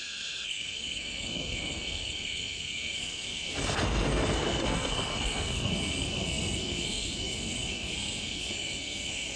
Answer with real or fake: fake